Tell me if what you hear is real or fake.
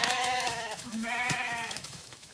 fake